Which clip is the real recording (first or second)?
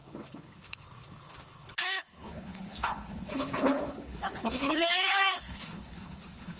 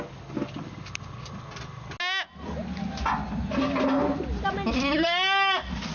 second